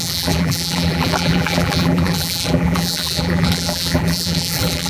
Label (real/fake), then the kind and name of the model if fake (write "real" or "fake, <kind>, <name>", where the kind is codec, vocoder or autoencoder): fake, vocoder, BigVGAN v2